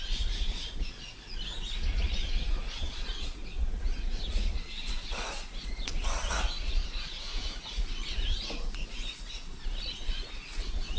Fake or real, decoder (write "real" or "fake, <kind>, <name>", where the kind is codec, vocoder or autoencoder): fake, vocoder, Vocos